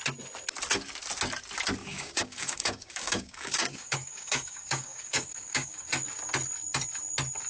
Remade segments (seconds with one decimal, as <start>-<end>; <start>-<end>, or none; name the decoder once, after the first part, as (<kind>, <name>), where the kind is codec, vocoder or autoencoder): 1.8-5.9 (codec, DAC)